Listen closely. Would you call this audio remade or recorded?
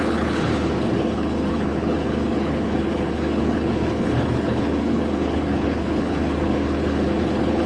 remade